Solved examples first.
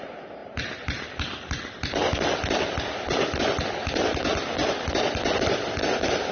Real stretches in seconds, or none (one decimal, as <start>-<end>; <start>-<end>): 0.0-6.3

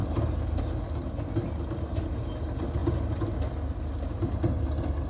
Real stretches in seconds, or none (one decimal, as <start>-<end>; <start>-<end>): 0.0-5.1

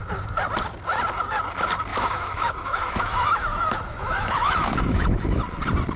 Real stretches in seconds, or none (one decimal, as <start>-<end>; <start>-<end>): 0.0-1.9; 5.4-6.0

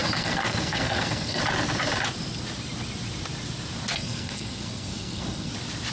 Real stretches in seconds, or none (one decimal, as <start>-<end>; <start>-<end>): 1.4-3.9; 5.5-5.9

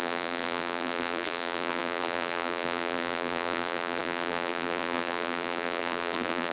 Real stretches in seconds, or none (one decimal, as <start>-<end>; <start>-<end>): none

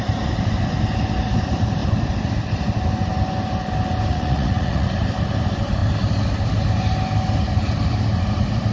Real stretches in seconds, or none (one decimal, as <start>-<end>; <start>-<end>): 0.0-4.1; 4.9-8.7